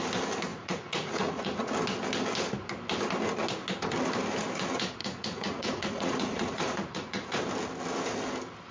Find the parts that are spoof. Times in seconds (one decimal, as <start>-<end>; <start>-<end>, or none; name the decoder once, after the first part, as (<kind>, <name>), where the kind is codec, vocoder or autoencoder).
0.5-1.7 (vocoder, Vocos); 5.0-7.4